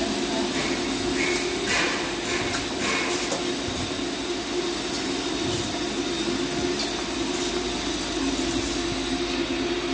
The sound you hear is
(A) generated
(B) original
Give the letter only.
B